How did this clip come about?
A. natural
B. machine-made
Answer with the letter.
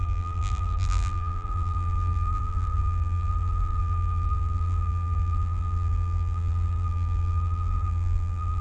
B